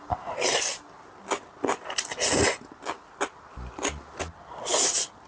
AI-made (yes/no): no